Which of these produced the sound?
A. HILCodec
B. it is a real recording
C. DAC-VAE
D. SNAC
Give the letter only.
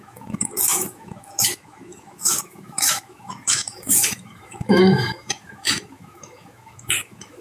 C